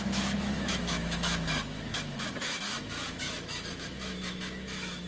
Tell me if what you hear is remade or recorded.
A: remade